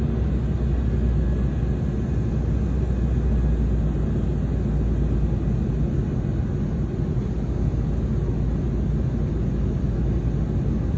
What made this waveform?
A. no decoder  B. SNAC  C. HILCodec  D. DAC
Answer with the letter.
A